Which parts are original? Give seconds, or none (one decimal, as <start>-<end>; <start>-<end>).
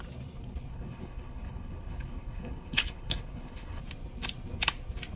0.0-0.7; 3.8-5.2